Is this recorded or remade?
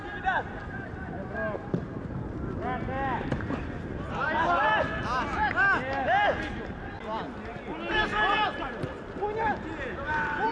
recorded